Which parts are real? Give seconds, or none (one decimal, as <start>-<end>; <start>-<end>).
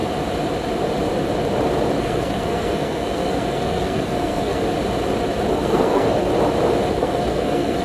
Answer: 0.0-2.0; 4.6-5.5; 6.3-6.9